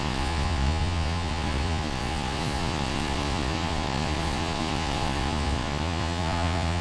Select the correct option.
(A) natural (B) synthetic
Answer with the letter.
B